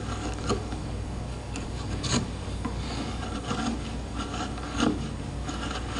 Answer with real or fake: fake